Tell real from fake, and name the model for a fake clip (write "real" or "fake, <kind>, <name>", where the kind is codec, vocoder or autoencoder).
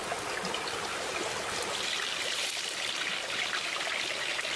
real